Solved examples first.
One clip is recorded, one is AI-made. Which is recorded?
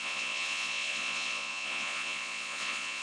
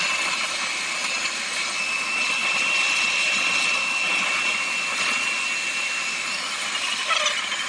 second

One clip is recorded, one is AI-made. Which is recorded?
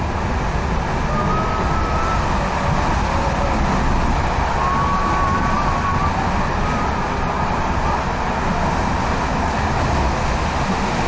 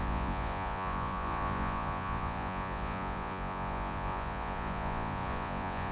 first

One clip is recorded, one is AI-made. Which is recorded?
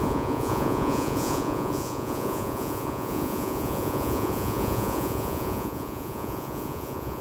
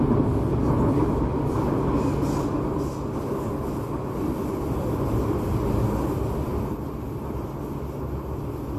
second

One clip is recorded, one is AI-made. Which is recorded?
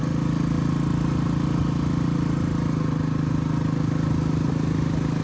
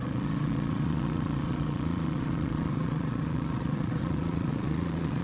first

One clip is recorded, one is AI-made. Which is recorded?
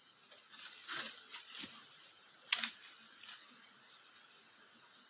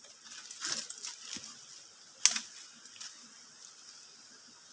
second